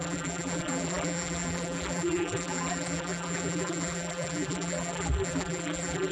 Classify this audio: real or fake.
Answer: fake